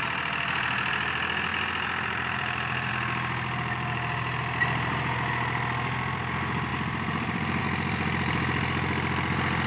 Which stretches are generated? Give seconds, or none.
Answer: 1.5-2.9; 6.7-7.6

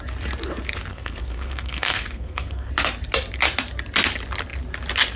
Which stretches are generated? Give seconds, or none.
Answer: 0.9-2.7